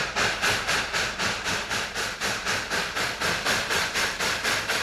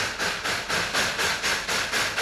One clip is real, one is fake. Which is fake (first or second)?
first